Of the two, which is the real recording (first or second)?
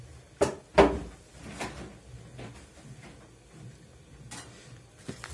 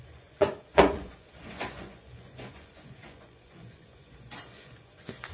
first